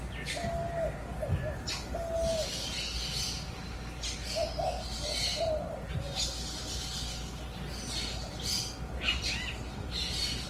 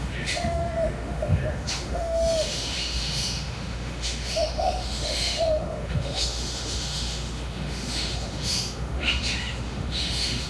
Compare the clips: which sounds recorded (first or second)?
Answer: first